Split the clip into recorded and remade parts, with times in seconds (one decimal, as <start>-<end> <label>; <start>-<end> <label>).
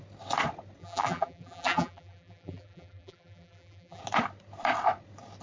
0.0-0.8 recorded; 0.8-4.0 remade; 4.0-5.4 recorded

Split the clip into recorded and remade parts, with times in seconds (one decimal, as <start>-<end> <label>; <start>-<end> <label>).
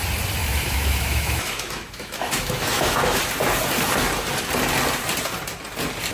0.0-0.4 recorded; 0.4-3.2 remade; 3.2-6.1 recorded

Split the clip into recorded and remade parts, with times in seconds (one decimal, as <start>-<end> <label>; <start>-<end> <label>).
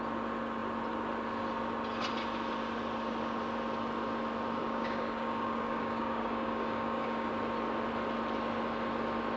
0.0-4.6 recorded; 4.6-7.3 remade; 7.3-9.4 recorded